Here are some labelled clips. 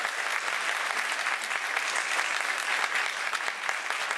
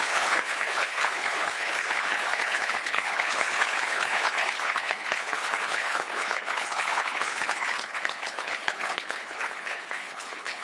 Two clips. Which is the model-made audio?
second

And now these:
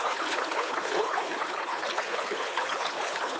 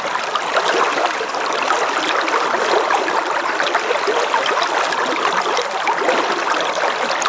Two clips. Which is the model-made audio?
first